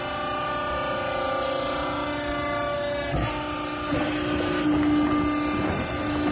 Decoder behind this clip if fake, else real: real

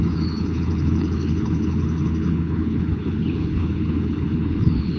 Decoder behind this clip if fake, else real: fake, codec, HILCodec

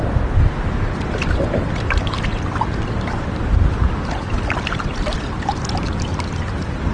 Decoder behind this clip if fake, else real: real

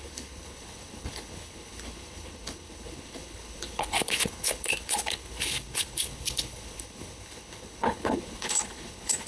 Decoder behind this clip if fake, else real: fake, codec, HILCodec